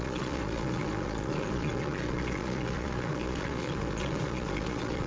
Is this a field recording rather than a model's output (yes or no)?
no